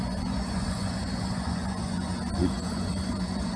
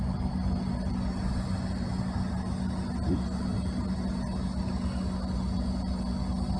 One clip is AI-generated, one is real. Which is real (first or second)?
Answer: second